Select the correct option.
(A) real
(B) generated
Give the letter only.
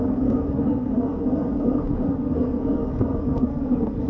B